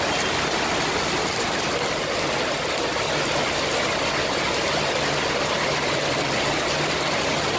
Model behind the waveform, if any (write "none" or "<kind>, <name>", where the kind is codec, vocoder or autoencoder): none